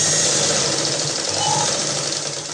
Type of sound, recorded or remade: recorded